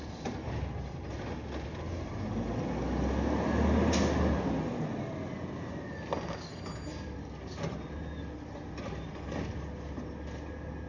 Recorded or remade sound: recorded